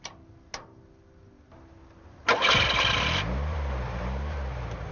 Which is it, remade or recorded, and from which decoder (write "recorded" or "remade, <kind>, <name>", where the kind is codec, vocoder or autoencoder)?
recorded